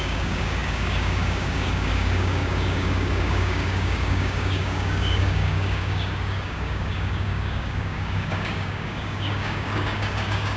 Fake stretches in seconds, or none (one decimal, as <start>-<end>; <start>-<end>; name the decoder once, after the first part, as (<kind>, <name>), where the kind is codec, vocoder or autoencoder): 0.0-10.6 (codec, DAC)